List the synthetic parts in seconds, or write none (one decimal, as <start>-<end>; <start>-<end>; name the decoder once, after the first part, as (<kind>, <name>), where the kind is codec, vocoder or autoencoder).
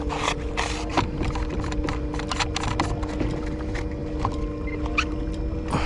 0.9-1.9 (vocoder, BigVGAN v2)